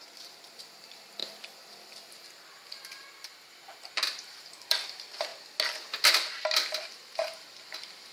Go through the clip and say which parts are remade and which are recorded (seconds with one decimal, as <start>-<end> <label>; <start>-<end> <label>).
0.0-1.2 remade; 1.2-2.1 recorded; 2.1-5.3 remade; 5.3-6.8 recorded; 6.8-8.1 remade